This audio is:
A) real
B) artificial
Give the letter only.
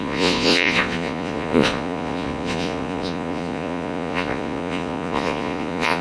B